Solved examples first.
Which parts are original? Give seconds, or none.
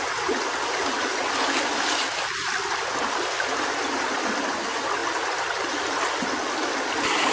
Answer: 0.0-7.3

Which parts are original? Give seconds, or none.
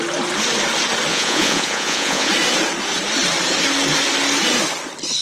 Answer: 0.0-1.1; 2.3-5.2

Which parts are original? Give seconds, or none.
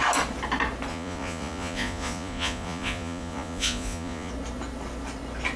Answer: 0.0-0.9; 4.3-5.6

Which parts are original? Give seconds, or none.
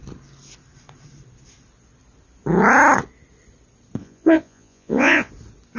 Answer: 0.0-4.0; 5.3-5.8